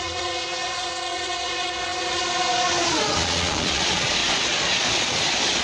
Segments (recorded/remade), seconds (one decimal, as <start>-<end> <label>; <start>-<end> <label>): 0.0-5.6 remade